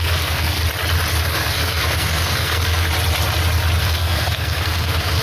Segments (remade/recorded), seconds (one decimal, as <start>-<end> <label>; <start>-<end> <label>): 0.0-0.6 remade; 0.6-1.2 recorded; 1.2-2.9 remade; 2.9-3.8 recorded; 3.8-5.2 remade